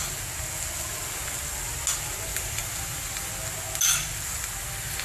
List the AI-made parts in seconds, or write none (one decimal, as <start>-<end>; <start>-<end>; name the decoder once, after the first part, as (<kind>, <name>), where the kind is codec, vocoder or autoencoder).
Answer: 2.3-3.3 (vocoder, BigVGAN v2)